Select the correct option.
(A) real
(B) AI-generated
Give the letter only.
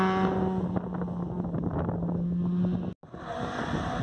A